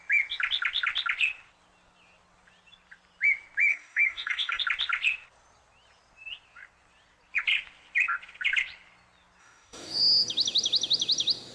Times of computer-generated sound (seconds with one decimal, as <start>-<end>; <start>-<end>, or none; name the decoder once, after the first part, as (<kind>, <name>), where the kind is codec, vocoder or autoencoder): 3.7-4.6 (codec, DAC); 9.4-10.0